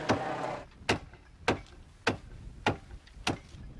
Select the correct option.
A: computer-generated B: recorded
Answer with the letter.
B